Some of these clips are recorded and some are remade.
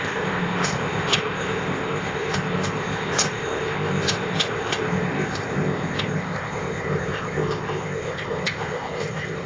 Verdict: remade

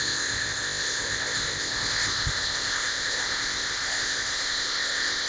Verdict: remade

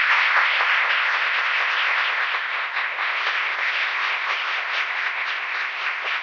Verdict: remade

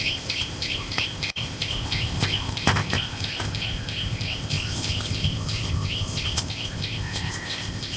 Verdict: remade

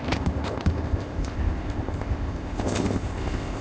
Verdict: remade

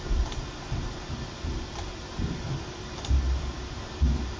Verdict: recorded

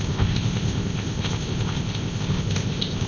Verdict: remade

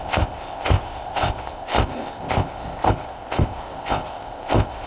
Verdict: remade